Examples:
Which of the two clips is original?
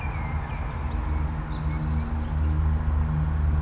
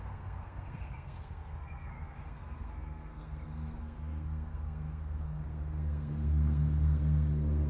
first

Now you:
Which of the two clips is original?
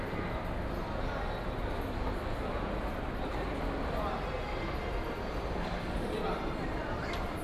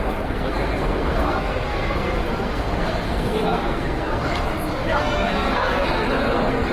first